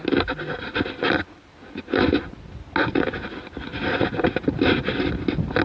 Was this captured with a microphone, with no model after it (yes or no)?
yes